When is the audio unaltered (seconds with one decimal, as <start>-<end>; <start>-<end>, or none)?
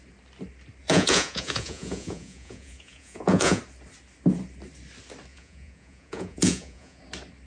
0.0-0.8; 3.6-5.3; 7.0-7.5